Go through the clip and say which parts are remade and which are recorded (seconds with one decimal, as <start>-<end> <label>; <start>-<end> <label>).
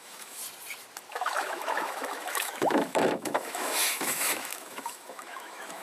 0.0-0.4 remade; 0.4-1.1 recorded; 1.1-5.8 remade